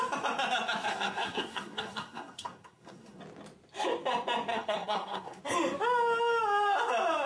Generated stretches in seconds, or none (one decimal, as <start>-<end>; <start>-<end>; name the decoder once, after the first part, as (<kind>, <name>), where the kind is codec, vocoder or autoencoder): 0.9-3.2 (codec, SNAC); 4.5-5.4